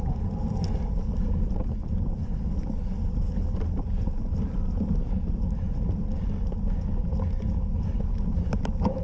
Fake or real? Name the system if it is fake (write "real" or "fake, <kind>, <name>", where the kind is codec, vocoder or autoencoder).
real